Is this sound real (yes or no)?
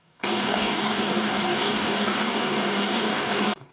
no